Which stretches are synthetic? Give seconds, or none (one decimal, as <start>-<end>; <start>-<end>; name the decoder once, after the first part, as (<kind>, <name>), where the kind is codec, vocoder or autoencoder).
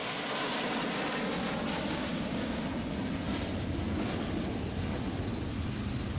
1.7-2.6 (codec, DAC)